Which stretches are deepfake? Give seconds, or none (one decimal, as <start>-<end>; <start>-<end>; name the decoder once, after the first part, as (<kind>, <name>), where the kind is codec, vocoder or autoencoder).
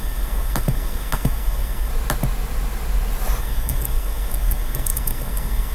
0.0-1.9 (codec, SNAC); 3.4-5.7